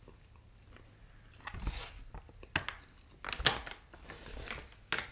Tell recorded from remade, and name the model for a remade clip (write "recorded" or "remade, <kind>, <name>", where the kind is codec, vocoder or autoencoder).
recorded